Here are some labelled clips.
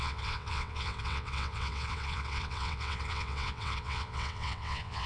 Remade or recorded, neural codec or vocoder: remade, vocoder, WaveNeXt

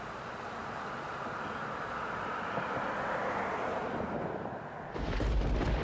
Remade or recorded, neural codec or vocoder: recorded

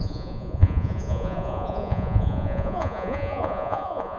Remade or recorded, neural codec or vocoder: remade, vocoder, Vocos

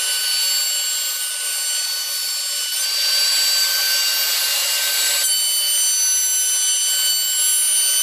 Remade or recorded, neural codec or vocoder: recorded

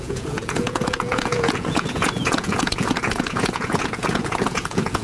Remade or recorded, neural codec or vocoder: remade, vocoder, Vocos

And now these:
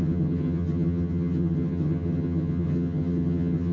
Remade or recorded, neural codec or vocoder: remade, vocoder, HiFi-GAN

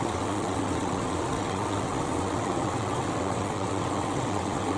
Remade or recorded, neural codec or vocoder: remade, vocoder, WaveNeXt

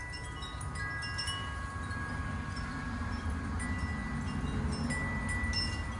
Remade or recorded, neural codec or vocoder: recorded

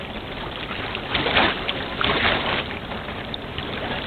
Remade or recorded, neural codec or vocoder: remade, vocoder, BigVGAN v2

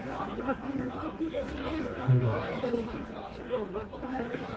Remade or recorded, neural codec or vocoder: remade, codec, SNAC